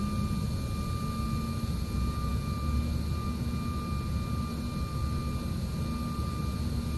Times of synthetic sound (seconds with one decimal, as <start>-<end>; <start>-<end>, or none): none